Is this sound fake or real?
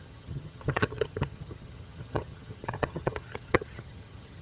fake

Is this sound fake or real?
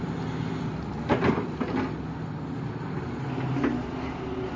real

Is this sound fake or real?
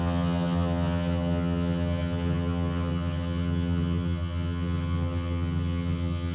fake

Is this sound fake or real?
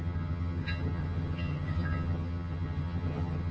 fake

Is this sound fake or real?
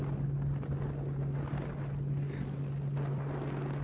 real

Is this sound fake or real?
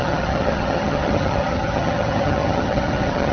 fake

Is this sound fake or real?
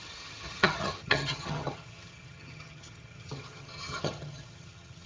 fake